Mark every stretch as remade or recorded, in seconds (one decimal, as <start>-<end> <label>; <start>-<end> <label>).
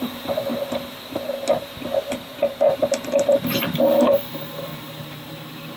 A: 0.0-0.5 remade; 0.5-1.1 recorded; 1.1-5.8 remade